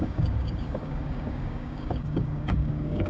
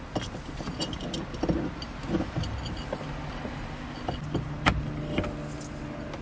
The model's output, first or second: first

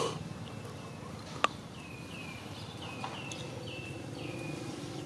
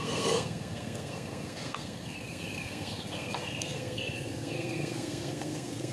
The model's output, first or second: second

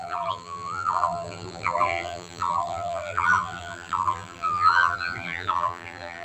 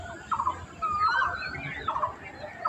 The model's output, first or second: first